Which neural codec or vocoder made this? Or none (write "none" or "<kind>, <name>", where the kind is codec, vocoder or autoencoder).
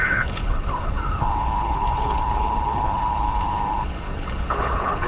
codec, HILCodec